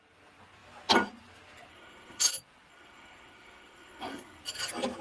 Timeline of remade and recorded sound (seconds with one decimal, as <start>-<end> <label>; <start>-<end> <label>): 0.0-1.7 recorded; 1.7-2.3 remade; 2.3-2.7 recorded; 2.7-4.4 remade; 4.4-5.0 recorded